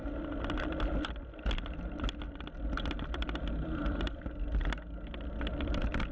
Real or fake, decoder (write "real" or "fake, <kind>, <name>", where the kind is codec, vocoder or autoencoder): real